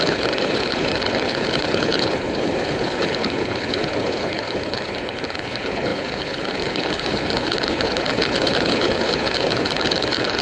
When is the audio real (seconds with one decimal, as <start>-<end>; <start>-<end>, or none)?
none